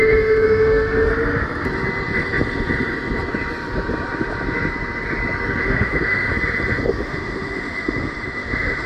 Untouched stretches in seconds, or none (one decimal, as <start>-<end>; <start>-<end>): 1.1-5.6; 6.3-6.9